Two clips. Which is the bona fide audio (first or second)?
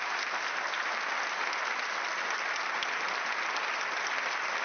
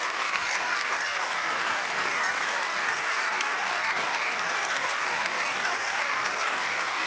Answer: first